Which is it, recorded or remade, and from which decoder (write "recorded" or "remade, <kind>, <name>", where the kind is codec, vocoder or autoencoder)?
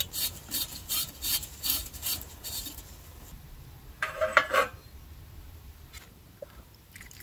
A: remade, vocoder, BigVGAN v2